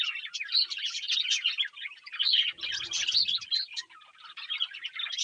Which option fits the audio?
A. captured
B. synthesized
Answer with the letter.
A